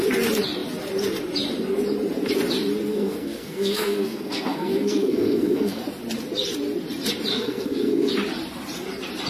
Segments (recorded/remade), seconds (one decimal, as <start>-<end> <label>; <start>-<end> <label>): 0.0-2.9 recorded; 2.9-5.8 remade; 5.8-7.3 recorded; 7.3-8.1 remade; 8.1-9.3 recorded